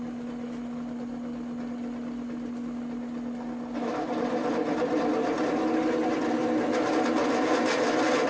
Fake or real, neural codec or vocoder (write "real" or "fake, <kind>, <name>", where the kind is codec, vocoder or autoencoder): real